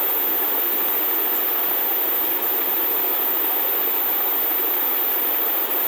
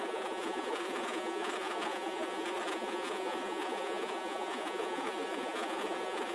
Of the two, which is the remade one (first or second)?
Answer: second